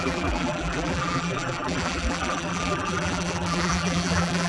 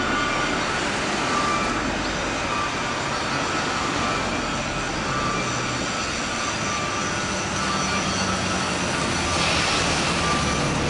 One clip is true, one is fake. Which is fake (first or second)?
first